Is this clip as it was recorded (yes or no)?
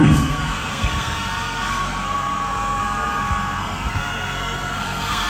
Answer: no